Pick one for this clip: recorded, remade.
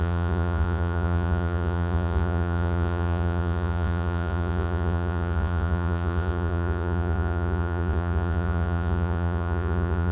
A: remade